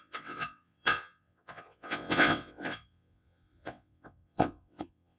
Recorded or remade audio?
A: remade